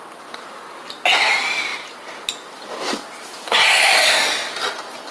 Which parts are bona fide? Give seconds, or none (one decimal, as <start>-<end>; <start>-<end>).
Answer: 0.0-5.1